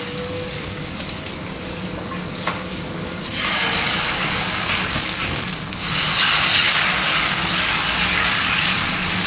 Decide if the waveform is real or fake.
fake